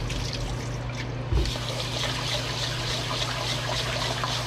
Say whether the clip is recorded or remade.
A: recorded